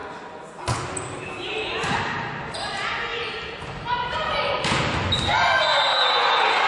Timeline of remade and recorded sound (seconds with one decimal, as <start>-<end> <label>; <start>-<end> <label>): 0.0-6.7 recorded